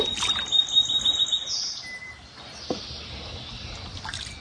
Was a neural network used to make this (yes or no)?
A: no